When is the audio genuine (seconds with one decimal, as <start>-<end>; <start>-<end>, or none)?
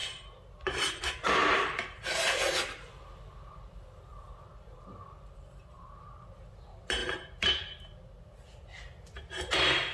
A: 1.0-1.4; 5.8-9.9